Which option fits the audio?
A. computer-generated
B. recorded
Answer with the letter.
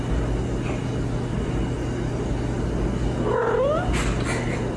B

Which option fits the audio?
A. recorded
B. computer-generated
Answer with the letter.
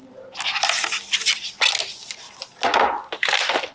A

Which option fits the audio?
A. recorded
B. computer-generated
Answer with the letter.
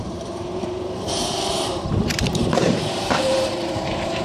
B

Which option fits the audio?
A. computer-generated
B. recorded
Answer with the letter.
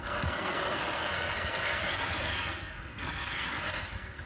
A